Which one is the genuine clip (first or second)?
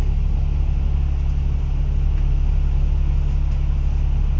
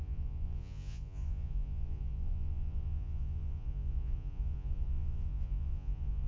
first